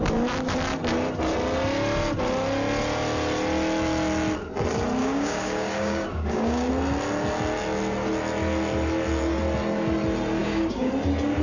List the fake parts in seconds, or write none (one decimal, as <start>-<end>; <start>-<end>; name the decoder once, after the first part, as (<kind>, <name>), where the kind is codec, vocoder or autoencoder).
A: 5.0-6.7 (codec, DAC); 10.4-10.9